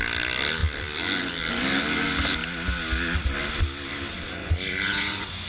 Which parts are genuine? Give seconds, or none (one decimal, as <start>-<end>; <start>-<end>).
0.0-4.4

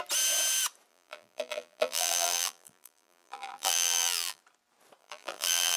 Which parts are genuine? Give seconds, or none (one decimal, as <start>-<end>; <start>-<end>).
0.0-0.9; 4.4-5.0